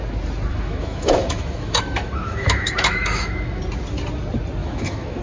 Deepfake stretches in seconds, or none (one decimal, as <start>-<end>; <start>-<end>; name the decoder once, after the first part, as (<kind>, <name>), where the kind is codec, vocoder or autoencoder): 0.5-3.6 (autoencoder, DAC-VAE); 4.6-5.2